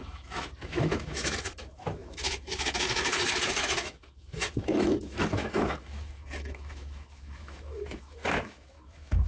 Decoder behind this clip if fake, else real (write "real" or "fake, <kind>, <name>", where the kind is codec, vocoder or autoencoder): fake, autoencoder, DAC-VAE